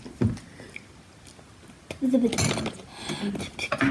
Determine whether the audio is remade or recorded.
recorded